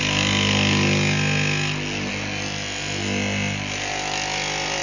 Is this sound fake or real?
real